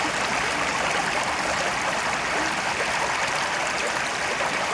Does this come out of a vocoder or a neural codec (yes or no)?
no